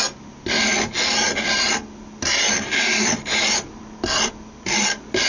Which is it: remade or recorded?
recorded